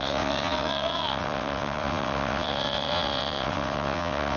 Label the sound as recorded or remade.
remade